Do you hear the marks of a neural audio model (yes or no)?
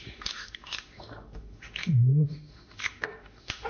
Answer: yes